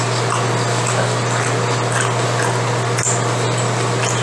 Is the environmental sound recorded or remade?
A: recorded